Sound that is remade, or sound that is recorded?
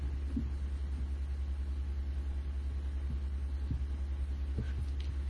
recorded